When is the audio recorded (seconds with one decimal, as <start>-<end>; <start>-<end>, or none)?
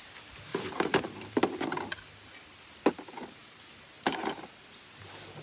0.0-0.5; 1.6-3.4; 5.0-5.4